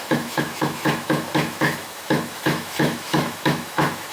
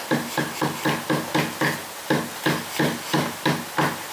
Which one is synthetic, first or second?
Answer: first